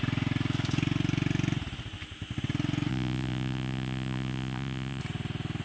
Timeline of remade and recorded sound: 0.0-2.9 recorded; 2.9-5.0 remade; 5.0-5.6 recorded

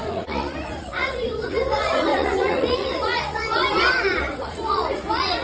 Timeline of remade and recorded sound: 0.0-3.6 remade; 3.6-4.2 recorded; 4.2-5.4 remade

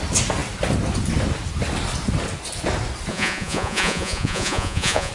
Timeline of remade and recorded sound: 0.0-3.1 recorded; 3.1-5.1 remade

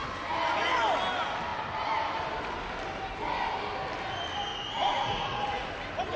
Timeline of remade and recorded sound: 0.0-4.5 recorded; 4.5-5.7 remade; 5.7-6.2 recorded

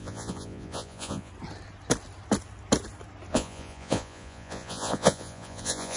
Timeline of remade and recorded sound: 0.0-1.3 remade; 1.3-3.3 recorded; 3.3-6.0 remade

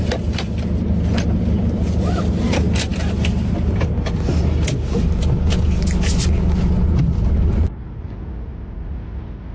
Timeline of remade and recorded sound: 0.0-9.5 recorded

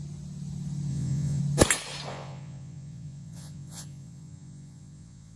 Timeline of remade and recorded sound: 0.0-0.9 recorded; 0.9-1.4 remade; 1.4-2.1 recorded; 2.1-5.4 remade